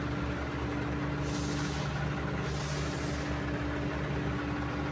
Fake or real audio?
real